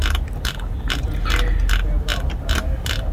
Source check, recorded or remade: recorded